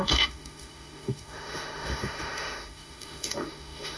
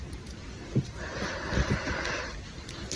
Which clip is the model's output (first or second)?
first